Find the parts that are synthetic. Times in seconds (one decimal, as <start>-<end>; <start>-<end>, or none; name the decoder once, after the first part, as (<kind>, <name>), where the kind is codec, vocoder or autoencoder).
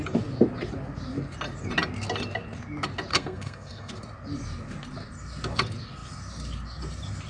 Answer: 3.1-3.9 (codec, SNAC)